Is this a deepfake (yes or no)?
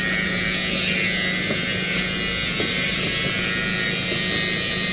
no